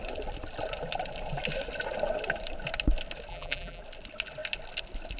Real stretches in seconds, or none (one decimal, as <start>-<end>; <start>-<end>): 0.0-3.3; 3.8-5.2